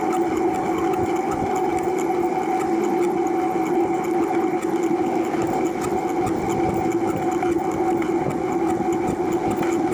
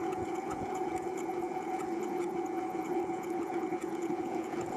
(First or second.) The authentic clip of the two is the first